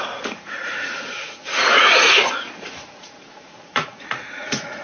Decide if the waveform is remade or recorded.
remade